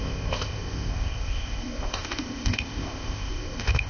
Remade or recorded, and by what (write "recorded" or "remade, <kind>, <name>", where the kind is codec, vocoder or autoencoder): remade, codec, ZipCodec